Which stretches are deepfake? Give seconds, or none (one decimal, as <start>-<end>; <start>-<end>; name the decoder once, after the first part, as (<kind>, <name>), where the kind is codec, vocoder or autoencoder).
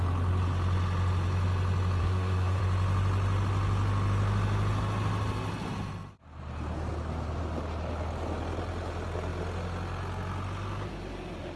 2.0-2.6 (codec, SNAC)